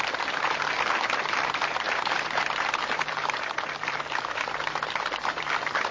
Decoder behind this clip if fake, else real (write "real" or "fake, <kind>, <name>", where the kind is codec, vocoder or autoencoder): fake, vocoder, BigVGAN v2